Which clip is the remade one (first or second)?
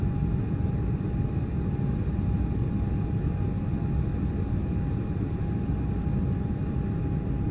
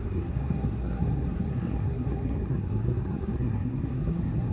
second